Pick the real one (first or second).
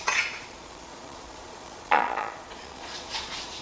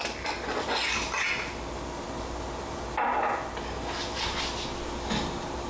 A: second